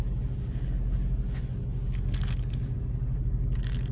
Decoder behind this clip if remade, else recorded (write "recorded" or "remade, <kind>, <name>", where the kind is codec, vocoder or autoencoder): recorded